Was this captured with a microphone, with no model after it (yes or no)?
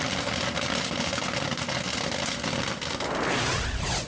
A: yes